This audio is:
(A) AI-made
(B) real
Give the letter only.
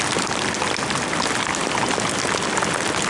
B